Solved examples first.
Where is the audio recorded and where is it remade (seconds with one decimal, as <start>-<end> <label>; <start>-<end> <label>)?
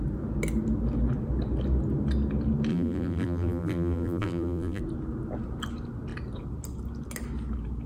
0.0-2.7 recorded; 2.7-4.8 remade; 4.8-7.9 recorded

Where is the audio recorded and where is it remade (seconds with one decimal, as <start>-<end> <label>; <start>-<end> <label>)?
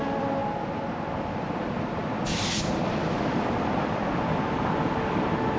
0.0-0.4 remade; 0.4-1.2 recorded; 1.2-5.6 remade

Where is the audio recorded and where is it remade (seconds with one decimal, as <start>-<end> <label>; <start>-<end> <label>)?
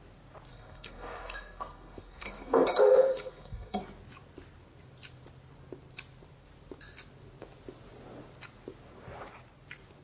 0.0-0.5 recorded; 0.5-3.8 remade; 3.8-10.0 recorded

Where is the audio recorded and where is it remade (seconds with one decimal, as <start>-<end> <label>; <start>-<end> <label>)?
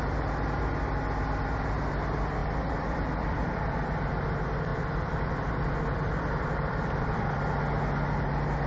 0.0-2.4 recorded; 2.4-4.1 remade; 4.1-4.7 recorded; 4.7-7.5 remade; 7.5-8.7 recorded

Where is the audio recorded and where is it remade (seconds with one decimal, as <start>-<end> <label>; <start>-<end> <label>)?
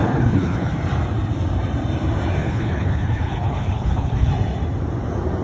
0.0-0.7 remade; 0.7-2.4 recorded; 2.4-4.3 remade; 4.3-5.4 recorded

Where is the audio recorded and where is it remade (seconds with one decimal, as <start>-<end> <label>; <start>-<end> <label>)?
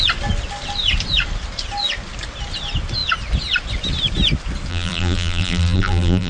0.0-4.7 recorded; 4.7-6.3 remade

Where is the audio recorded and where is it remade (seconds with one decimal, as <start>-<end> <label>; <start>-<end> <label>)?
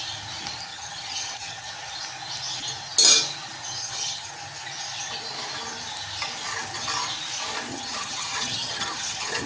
0.0-0.7 recorded; 0.7-1.7 remade; 1.7-3.8 recorded; 3.8-4.3 remade; 4.3-7.7 recorded; 7.7-9.5 remade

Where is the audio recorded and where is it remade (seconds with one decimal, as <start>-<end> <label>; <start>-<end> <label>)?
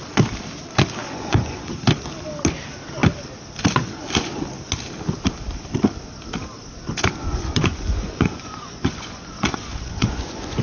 0.0-1.0 recorded; 1.0-1.7 remade; 1.7-7.2 recorded; 7.2-10.6 remade